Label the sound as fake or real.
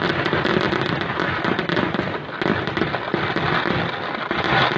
real